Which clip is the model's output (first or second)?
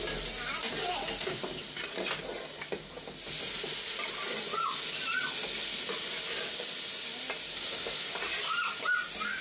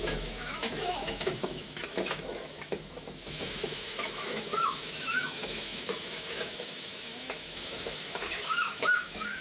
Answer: second